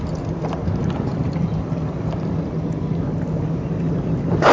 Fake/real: fake